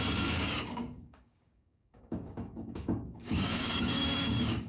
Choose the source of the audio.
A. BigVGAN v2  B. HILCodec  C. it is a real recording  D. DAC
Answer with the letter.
D